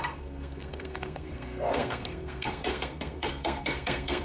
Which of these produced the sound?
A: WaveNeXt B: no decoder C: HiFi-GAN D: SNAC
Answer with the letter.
D